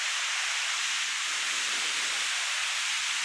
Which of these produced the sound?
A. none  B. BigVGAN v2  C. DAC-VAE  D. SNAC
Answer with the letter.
A